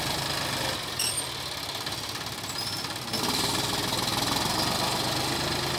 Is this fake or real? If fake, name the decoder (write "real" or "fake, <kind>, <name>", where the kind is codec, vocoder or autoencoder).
real